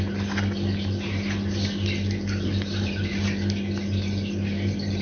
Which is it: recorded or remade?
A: recorded